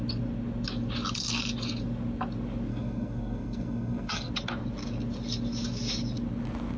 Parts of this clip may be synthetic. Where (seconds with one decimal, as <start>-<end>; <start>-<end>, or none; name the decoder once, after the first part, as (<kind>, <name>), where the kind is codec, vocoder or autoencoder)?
2.7-4.3 (codec, SNAC)